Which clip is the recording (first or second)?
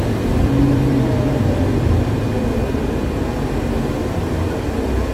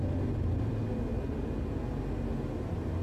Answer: second